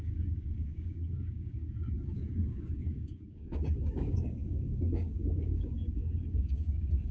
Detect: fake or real fake